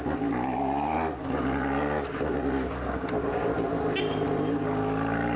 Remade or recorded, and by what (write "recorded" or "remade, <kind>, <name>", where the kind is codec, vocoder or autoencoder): recorded